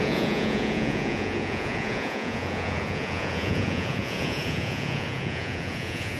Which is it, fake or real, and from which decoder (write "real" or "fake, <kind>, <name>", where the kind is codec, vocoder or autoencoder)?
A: fake, vocoder, Vocos